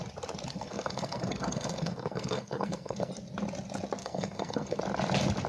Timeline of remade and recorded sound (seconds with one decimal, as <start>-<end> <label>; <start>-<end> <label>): 0.0-0.5 recorded; 0.5-3.1 remade; 3.1-4.0 recorded; 4.0-4.8 remade; 4.8-5.5 recorded